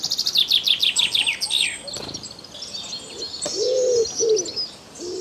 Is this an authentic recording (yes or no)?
yes